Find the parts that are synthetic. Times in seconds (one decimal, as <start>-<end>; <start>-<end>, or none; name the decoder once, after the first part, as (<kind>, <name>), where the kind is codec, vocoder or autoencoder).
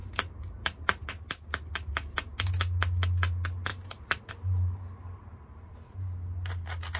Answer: 0.0-1.1 (vocoder, BigVGAN v2); 3.7-4.3